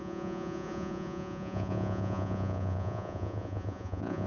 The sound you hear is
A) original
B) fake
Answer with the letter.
B